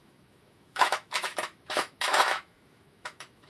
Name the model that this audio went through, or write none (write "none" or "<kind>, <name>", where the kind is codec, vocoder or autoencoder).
autoencoder, DAC-VAE